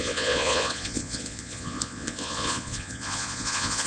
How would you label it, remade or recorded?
remade